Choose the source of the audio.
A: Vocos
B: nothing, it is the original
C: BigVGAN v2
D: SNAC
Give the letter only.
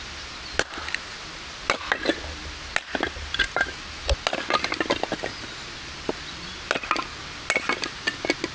B